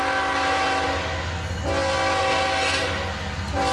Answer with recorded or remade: recorded